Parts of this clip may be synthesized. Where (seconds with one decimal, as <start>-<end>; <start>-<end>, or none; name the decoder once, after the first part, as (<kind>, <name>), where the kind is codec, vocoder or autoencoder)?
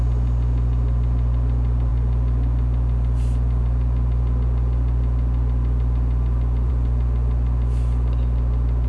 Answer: none